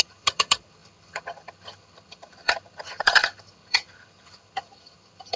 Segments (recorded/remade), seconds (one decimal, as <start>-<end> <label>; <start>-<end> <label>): 0.0-5.4 remade